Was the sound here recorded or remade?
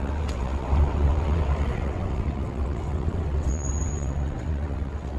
remade